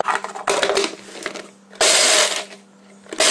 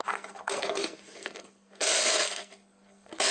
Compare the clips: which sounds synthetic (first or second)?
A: second